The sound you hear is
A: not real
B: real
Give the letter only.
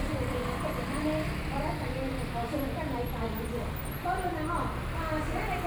B